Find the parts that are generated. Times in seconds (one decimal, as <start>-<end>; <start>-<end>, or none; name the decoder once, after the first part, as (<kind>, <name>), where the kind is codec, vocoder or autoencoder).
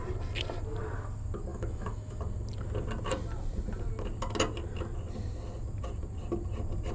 1.5-2.2 (autoencoder, DAC-VAE)